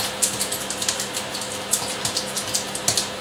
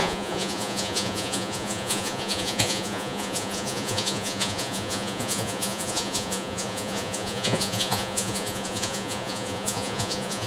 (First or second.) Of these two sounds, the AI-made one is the second